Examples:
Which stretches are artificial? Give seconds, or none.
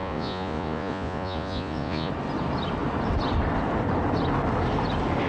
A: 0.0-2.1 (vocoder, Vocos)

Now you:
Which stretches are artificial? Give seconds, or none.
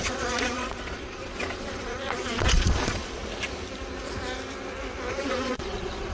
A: 0.0-3.2 (vocoder, Vocos); 5.1-6.1